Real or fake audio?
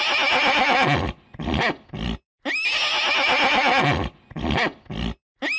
real